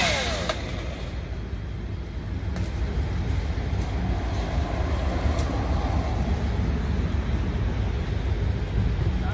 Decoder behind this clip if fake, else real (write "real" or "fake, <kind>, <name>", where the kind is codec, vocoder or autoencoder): real